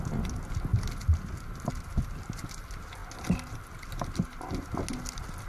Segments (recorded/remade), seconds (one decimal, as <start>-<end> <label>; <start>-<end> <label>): 0.0-5.5 recorded